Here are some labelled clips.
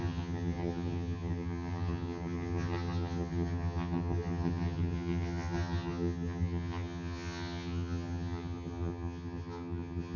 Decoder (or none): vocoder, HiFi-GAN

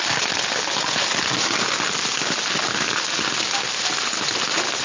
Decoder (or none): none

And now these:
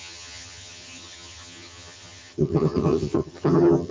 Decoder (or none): vocoder, HiFi-GAN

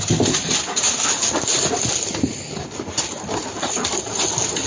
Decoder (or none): none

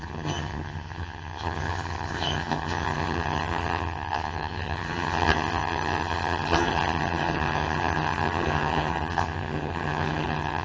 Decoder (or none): vocoder, HiFi-GAN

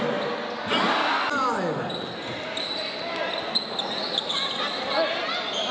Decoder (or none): none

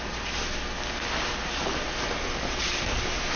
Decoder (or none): none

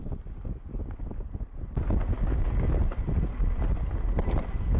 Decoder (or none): none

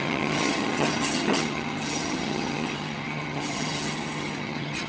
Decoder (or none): vocoder, HiFi-GAN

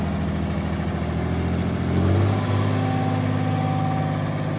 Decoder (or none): none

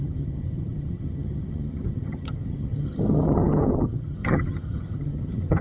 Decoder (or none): vocoder, HiFi-GAN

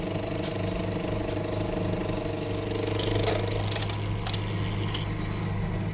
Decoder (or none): none